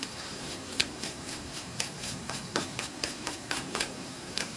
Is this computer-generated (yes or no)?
yes